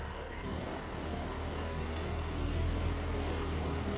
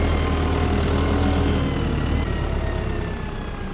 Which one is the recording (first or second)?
second